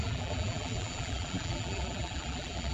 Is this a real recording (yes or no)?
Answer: no